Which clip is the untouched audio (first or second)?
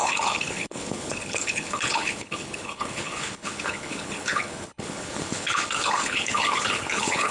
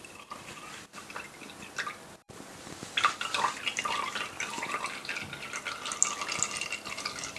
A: second